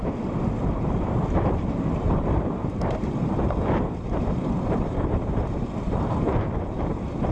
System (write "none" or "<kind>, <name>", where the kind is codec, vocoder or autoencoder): vocoder, BigVGAN v2